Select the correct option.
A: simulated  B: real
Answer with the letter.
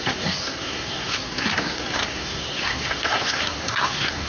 A